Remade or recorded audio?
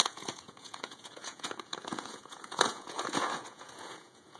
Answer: remade